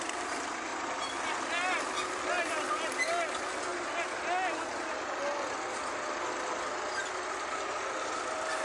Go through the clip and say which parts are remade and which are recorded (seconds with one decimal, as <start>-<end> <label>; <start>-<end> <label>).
0.0-8.6 recorded